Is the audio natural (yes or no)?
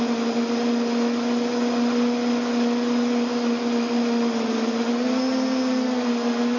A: yes